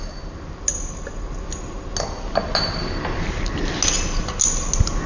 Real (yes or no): yes